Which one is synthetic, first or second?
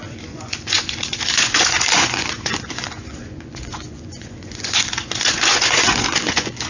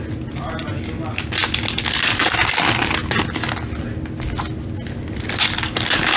first